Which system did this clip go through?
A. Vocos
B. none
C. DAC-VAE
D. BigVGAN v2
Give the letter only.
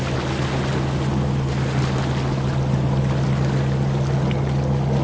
B